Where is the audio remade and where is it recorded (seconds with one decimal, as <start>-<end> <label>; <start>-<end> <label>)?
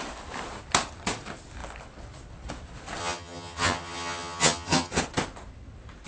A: 0.0-3.0 recorded; 3.0-5.0 remade; 5.0-6.1 recorded